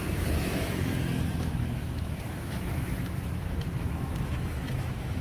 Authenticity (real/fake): fake